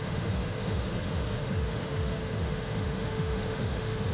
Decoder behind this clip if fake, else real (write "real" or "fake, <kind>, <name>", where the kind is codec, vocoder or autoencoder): fake, autoencoder, DAC-VAE